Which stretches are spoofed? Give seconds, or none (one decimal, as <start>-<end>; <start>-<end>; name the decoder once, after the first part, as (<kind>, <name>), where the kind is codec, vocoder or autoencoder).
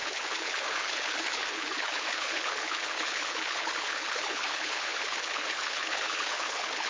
0.0-6.9 (codec, HILCodec)